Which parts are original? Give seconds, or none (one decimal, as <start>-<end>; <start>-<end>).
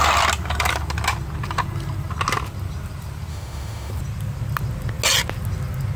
0.0-3.3; 3.9-6.0